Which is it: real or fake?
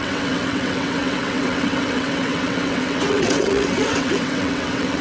fake